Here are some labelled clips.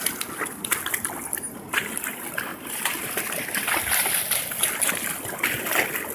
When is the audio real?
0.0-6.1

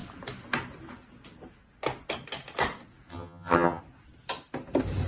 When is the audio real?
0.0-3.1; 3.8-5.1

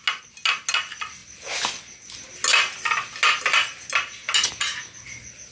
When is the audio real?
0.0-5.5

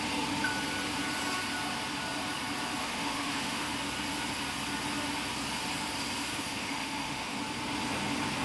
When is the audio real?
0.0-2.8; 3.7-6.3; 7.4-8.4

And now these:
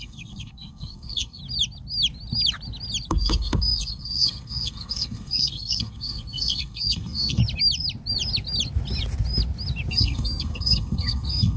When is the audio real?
1.4-3.1; 7.4-9.9